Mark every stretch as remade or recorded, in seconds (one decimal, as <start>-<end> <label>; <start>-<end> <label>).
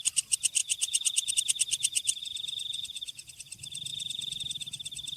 0.0-0.6 recorded; 0.6-1.3 remade; 1.3-2.2 recorded; 2.2-3.3 remade; 3.3-3.9 recorded; 3.9-4.4 remade; 4.4-5.2 recorded